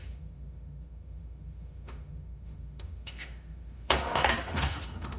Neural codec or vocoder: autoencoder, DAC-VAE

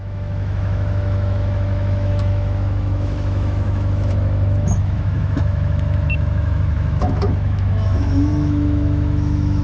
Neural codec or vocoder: autoencoder, DAC-VAE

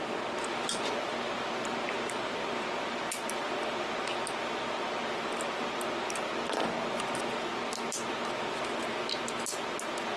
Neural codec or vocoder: none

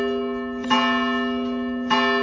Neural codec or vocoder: none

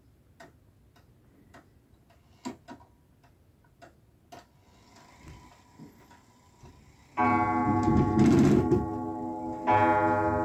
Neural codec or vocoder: none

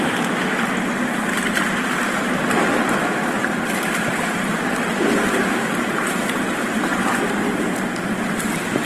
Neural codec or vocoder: none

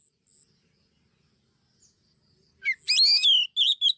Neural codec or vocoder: none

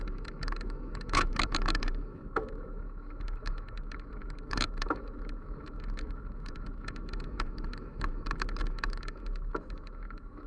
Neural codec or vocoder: autoencoder, DAC-VAE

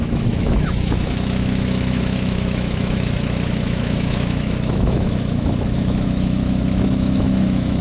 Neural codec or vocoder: autoencoder, DAC-VAE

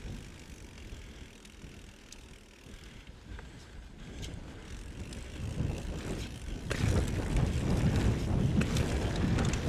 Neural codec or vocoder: none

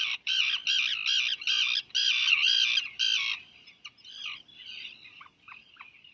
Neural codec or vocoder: none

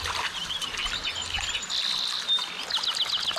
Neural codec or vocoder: none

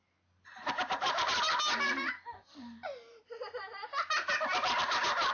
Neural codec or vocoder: none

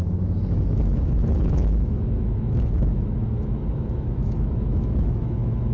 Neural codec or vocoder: autoencoder, DAC-VAE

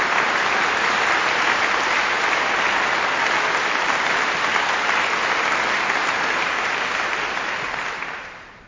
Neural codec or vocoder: none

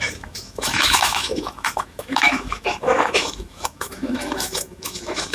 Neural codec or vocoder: autoencoder, DAC-VAE